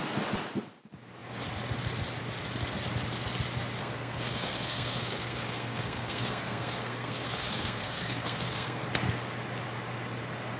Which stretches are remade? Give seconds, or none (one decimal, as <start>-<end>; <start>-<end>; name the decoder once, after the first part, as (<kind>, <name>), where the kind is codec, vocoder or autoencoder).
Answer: 3.8-8.9 (codec, SNAC)